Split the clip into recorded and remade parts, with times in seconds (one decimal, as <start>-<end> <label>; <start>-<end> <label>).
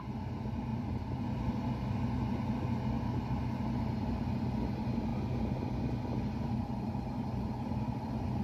0.0-0.7 recorded; 0.7-1.5 remade; 1.5-8.4 recorded